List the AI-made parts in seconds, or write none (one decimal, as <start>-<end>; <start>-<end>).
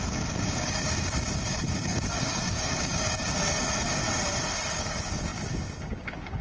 0.0-4.0; 4.7-6.4